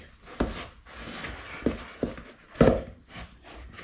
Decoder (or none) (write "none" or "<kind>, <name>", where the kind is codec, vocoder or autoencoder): none